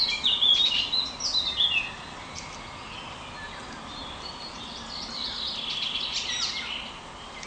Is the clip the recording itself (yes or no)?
yes